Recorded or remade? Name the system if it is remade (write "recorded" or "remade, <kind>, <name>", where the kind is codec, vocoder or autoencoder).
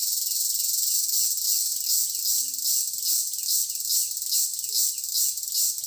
recorded